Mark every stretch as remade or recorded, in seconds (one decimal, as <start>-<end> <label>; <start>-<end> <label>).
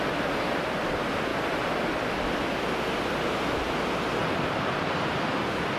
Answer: 0.0-5.8 recorded